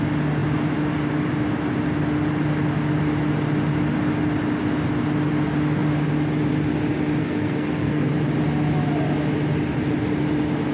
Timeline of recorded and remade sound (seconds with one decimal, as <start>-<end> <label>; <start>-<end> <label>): 0.0-7.2 recorded; 7.2-8.1 remade; 8.1-10.7 recorded

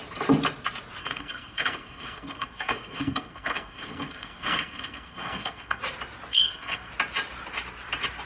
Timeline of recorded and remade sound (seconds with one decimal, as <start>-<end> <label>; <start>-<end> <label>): 0.0-1.0 recorded; 1.0-5.8 remade; 5.8-6.3 recorded; 6.3-6.9 remade; 6.9-8.3 recorded

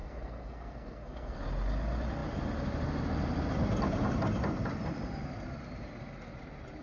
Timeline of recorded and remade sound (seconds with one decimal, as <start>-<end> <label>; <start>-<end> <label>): 0.0-1.4 remade; 1.4-6.8 recorded

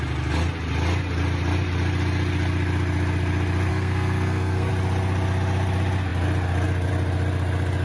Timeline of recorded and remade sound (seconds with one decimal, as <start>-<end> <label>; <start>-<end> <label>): 0.0-3.7 recorded; 3.7-4.7 remade; 4.7-7.8 recorded

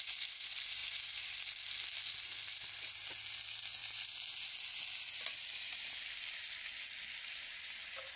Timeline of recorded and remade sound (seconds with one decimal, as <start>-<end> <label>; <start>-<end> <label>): 0.0-8.2 recorded

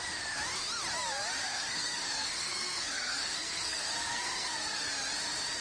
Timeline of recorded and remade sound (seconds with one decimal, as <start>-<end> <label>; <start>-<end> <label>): 0.0-1.4 recorded; 1.4-4.8 remade; 4.8-5.6 recorded